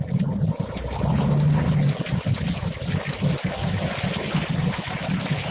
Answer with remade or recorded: recorded